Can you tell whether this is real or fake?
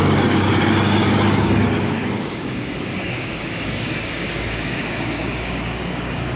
fake